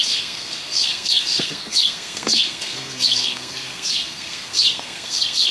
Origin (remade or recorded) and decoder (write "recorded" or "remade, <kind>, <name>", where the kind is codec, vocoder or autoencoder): remade, codec, SNAC